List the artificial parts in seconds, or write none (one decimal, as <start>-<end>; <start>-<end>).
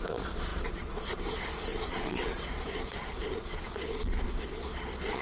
0.0-5.2